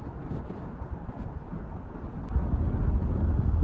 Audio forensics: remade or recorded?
recorded